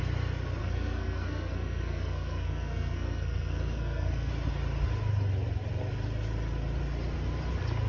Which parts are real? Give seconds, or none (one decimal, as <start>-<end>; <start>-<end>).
0.0-0.6; 4.3-7.9

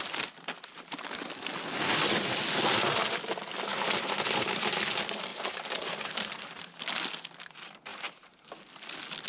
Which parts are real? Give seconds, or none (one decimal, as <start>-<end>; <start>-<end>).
0.0-3.7; 4.7-5.3; 6.8-7.9; 8.5-9.3

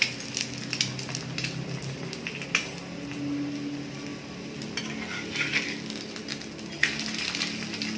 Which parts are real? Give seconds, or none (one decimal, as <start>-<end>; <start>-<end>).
0.0-8.0

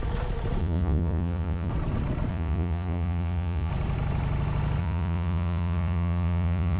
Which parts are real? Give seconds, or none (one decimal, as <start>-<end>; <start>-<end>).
0.0-0.6; 1.7-2.3; 3.7-4.8